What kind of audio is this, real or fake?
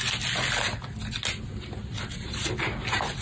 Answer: real